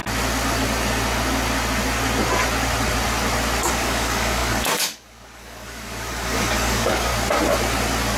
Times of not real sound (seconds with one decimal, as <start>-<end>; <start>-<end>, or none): 3.7-7.1